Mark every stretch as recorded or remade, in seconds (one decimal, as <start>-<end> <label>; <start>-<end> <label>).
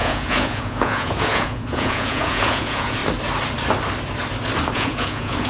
0.0-3.0 remade; 3.0-4.7 recorded; 4.7-5.5 remade